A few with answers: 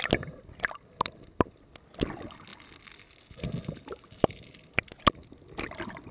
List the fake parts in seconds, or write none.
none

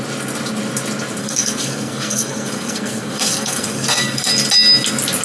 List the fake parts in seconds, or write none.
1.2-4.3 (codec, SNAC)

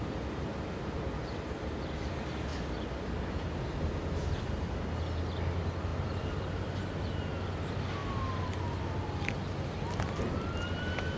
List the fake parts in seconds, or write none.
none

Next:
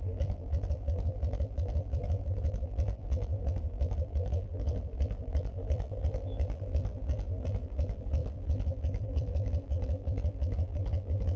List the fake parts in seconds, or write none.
0.0-11.4 (vocoder, BigVGAN v2)